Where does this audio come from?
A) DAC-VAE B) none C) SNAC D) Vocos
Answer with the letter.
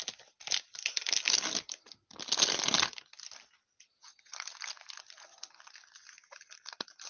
B